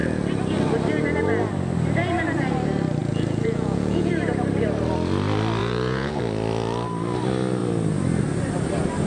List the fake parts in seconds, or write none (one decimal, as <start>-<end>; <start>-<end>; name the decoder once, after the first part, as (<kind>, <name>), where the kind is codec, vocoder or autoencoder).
3.0-4.1 (vocoder, Vocos); 5.6-6.2

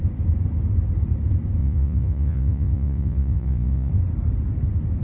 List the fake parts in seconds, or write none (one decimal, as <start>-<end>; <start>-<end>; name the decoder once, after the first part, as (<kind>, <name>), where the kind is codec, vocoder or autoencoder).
1.6-3.9 (vocoder, Vocos)

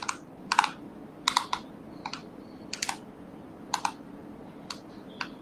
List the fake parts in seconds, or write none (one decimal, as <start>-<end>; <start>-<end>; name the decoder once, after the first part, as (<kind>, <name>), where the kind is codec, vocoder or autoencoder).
none

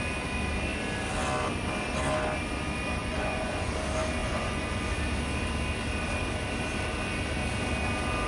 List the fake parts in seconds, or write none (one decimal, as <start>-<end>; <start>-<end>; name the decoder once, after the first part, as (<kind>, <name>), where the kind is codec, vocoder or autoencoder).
3.0-3.7 (vocoder, Vocos); 4.2-4.9

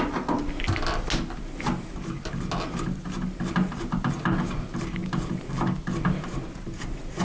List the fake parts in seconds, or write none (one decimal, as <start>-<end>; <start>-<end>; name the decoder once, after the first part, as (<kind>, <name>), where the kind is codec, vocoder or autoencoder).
none

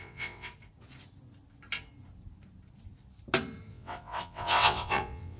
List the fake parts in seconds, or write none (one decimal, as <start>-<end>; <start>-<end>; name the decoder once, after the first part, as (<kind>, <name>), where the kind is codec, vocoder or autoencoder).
0.0-0.5 (vocoder, WaveNeXt); 3.7-5.4

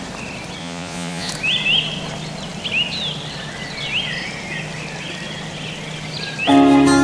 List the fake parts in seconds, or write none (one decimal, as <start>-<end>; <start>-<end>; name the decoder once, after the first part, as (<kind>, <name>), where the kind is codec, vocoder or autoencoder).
0.6-1.3 (vocoder, Vocos)

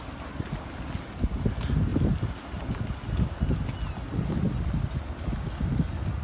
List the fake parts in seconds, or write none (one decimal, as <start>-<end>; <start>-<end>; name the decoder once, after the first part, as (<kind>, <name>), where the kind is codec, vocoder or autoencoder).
none